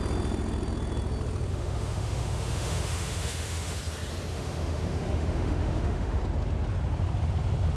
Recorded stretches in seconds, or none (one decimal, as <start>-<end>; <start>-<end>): 0.0-1.5; 3.8-4.3; 6.2-7.8

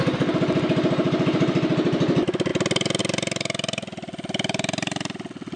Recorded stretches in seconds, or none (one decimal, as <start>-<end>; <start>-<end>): 0.0-5.6

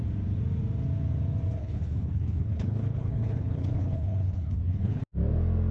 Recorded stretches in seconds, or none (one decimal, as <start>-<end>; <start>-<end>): 0.0-1.6; 5.0-5.7

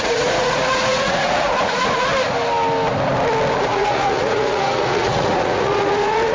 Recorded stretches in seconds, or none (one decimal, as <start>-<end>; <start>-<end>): 2.1-3.5

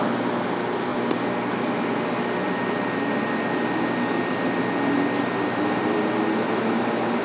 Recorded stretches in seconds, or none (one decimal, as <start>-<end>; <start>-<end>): 0.0-7.2

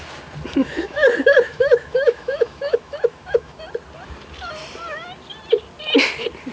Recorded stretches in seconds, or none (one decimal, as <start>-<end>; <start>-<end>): 0.0-0.6; 3.6-6.5